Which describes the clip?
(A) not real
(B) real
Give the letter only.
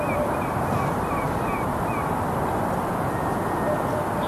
B